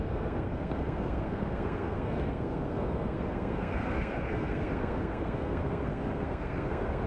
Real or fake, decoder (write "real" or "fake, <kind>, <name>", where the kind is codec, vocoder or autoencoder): fake, codec, SNAC